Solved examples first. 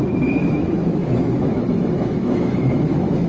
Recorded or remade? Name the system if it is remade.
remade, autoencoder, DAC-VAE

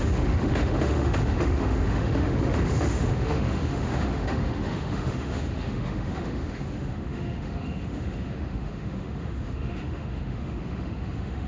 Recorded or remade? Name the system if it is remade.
remade, autoencoder, DAC-VAE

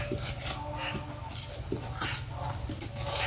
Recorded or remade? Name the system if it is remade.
recorded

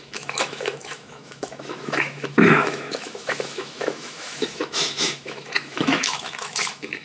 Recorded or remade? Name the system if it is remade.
remade, autoencoder, DAC-VAE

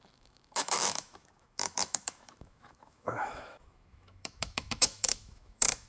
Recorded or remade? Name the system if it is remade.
remade, autoencoder, DAC-VAE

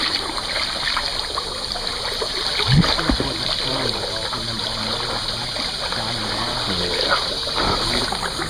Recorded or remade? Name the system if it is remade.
recorded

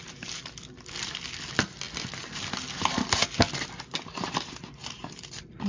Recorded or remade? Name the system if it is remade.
recorded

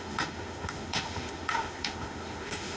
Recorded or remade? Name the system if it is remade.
remade, autoencoder, DAC-VAE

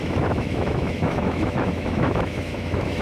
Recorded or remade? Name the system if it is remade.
remade, autoencoder, DAC-VAE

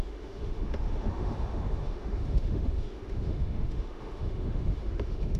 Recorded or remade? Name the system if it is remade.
remade, autoencoder, DAC-VAE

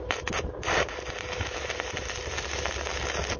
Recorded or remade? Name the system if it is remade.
recorded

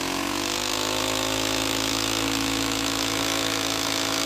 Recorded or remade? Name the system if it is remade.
remade, autoencoder, DAC-VAE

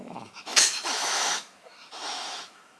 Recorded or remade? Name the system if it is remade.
remade, autoencoder, DAC-VAE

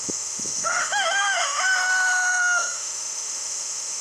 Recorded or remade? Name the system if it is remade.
remade, autoencoder, DAC-VAE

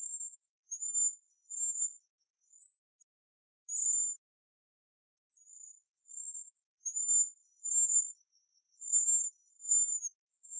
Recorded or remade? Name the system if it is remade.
remade, autoencoder, DAC-VAE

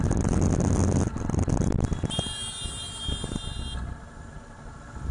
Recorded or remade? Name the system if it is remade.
recorded